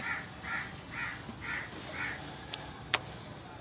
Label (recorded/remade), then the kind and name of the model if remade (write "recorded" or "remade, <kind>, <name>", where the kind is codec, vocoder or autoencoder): recorded